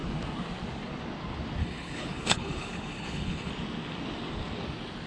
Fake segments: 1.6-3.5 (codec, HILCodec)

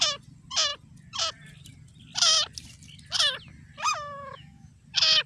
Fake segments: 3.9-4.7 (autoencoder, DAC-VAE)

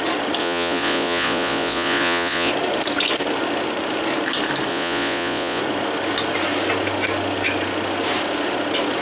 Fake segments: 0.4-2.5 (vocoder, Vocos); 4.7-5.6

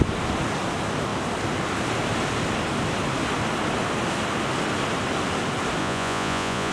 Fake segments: 5.8-6.7 (vocoder, Vocos)